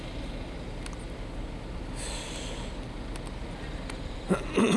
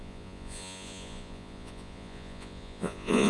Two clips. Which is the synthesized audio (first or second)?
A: second